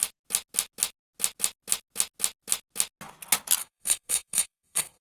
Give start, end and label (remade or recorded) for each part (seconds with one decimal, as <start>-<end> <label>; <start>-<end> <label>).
0.0-3.6 recorded; 3.6-5.0 remade